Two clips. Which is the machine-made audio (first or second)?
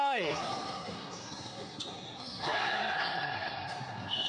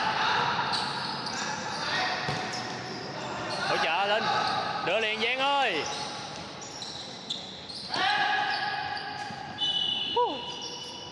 first